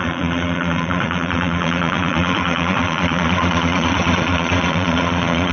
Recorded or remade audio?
remade